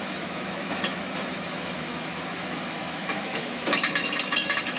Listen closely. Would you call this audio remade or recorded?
remade